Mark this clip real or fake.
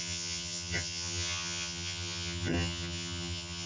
fake